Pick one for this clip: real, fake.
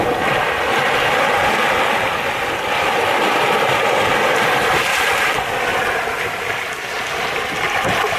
real